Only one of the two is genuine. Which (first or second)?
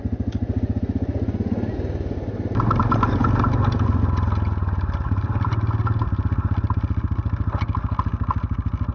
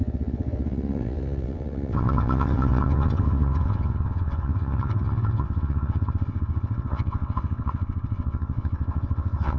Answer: first